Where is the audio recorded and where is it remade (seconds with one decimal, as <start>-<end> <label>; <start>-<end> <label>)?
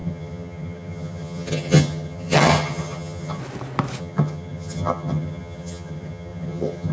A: 0.0-3.4 remade; 3.4-4.0 recorded; 4.0-6.9 remade